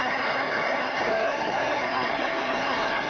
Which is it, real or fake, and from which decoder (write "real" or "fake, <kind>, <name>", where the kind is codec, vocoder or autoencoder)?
fake, codec, SNAC